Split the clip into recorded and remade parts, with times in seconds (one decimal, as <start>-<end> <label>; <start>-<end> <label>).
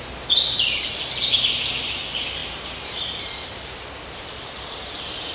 0.0-5.3 remade